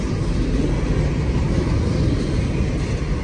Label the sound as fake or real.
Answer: real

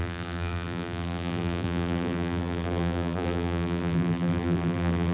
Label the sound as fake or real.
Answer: fake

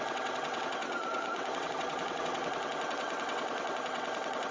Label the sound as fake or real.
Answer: fake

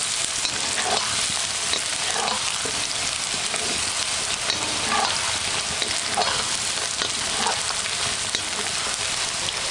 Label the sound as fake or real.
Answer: real